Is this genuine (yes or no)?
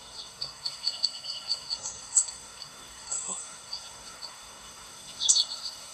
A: no